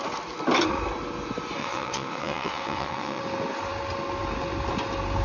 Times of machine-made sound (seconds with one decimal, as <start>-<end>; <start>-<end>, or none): 1.6-3.2